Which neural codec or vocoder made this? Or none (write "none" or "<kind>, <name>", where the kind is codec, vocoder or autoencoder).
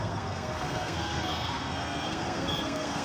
codec, SNAC